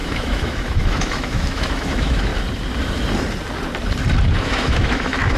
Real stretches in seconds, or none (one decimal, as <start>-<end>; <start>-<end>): 2.3-4.4